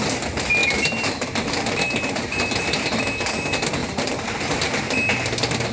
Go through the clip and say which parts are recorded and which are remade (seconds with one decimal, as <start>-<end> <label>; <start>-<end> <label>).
0.0-0.6 recorded; 0.6-2.9 remade; 2.9-3.8 recorded; 3.8-4.8 remade; 4.8-5.7 recorded